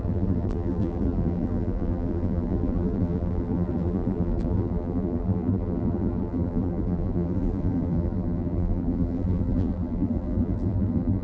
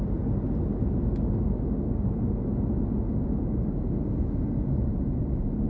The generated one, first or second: first